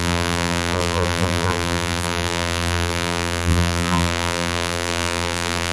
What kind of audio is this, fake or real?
fake